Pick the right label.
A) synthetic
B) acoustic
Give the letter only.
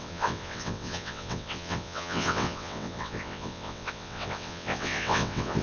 A